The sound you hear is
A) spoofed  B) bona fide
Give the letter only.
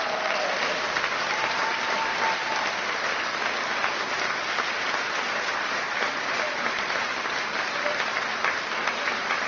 B